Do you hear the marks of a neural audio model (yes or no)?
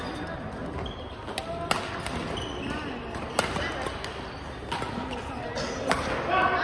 no